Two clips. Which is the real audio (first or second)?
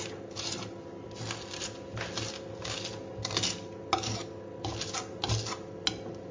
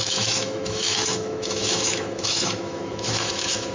first